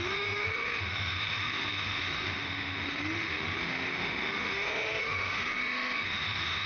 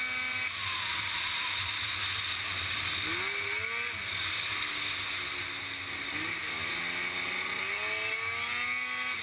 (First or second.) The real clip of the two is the second